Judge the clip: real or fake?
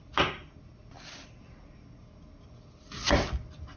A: real